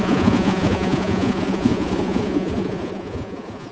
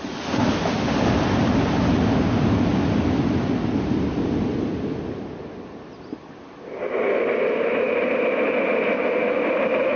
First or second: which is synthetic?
first